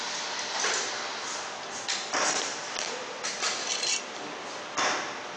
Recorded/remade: recorded